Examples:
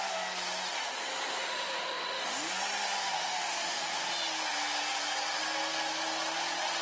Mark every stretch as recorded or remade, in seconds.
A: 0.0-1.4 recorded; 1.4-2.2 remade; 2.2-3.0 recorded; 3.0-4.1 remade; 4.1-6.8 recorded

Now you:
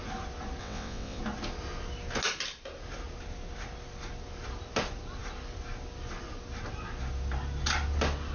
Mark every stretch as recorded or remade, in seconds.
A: 0.0-0.6 recorded; 0.6-1.2 remade; 1.2-8.3 recorded

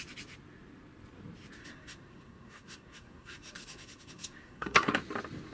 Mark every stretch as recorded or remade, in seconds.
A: 0.0-1.6 recorded; 1.6-4.9 remade; 4.9-5.5 recorded

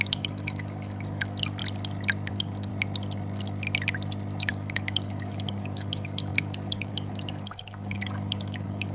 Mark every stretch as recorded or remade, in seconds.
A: 0.0-1.6 remade; 1.6-2.3 recorded; 2.3-2.7 remade; 2.7-4.5 recorded; 4.5-8.9 remade